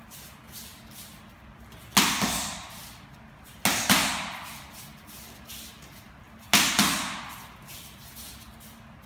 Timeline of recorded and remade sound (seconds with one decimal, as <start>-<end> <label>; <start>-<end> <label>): 0.0-9.1 recorded